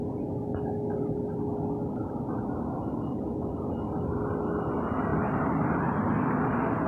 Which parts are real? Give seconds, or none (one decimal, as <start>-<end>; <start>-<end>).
0.0-5.1; 5.8-6.9